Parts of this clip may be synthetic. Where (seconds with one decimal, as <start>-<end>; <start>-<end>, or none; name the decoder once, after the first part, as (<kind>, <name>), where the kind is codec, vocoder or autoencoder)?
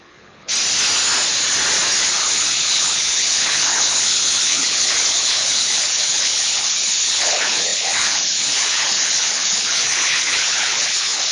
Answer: 0.0-0.5 (codec, HILCodec); 2.0-11.3